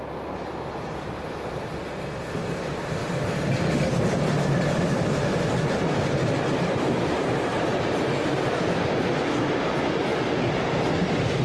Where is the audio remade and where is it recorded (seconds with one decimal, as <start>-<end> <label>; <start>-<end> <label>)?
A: 0.0-3.0 recorded; 3.0-3.6 remade; 3.6-5.3 recorded; 5.3-8.4 remade; 8.4-11.4 recorded